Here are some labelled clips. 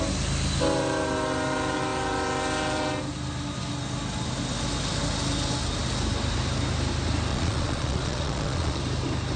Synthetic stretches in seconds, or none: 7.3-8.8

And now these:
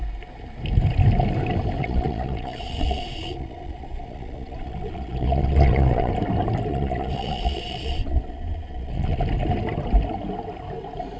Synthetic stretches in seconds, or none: 1.8-6.1; 6.7-9.2

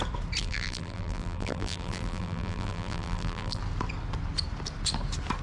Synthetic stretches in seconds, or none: 0.4-3.6

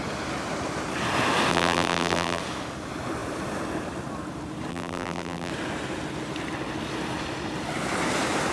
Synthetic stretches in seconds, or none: 1.5-2.4; 4.7-5.5

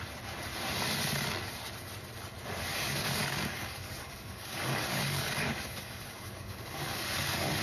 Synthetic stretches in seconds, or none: 2.7-7.6